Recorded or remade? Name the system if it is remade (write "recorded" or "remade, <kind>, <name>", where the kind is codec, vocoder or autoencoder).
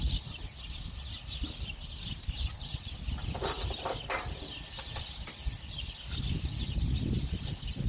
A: recorded